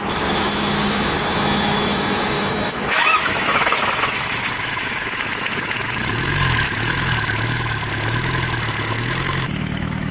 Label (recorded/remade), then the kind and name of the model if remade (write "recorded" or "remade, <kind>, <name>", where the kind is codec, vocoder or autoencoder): remade, autoencoder, DAC-VAE